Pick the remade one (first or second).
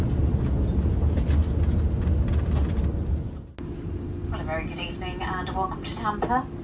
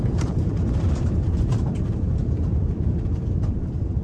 second